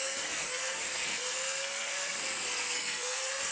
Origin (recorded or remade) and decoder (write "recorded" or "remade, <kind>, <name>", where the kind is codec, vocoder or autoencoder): remade, codec, SNAC